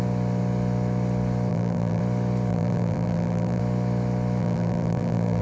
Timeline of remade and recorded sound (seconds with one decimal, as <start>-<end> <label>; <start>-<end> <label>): 0.0-1.5 recorded; 1.5-2.0 remade; 2.0-2.5 recorded; 2.5-3.6 remade; 3.6-4.4 recorded; 4.4-5.4 remade